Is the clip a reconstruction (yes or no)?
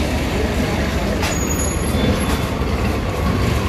no